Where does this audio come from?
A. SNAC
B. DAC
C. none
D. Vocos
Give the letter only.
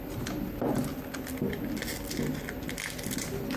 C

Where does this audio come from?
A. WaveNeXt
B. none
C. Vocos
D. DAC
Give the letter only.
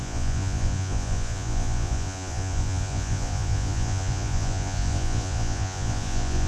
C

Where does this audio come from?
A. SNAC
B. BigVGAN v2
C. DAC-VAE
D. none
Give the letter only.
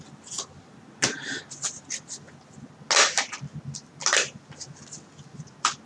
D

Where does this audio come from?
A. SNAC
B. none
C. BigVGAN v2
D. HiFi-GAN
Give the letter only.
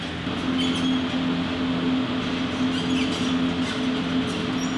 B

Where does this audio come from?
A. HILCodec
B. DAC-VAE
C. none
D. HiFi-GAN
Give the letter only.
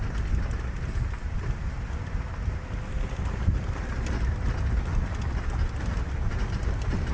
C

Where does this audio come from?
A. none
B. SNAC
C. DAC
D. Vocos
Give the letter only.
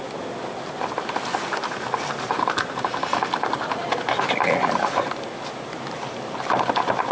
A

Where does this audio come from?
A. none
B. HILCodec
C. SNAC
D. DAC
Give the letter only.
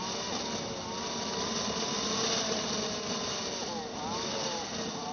A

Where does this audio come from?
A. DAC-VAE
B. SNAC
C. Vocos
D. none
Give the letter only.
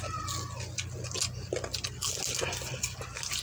D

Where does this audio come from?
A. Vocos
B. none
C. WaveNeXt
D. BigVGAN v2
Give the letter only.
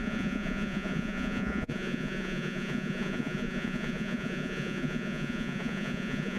A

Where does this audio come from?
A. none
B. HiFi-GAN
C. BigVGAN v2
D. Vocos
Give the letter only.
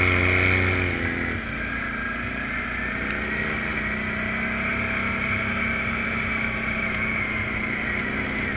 A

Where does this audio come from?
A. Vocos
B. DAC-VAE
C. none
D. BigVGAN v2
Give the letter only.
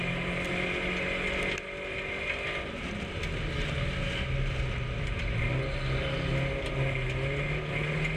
C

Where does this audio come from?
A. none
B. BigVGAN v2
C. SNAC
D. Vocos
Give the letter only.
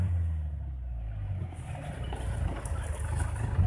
A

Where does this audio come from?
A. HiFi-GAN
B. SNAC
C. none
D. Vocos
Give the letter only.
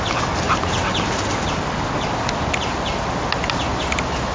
C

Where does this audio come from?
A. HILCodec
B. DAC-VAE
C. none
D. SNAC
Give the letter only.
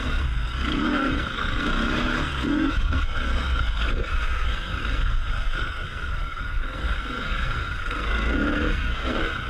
D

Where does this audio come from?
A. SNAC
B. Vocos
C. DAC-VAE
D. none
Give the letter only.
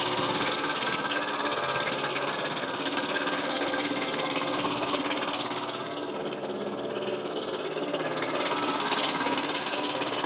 A